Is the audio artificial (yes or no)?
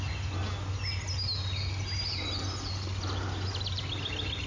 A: no